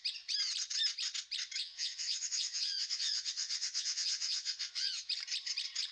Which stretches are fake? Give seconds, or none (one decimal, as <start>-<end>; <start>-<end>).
1.6-5.1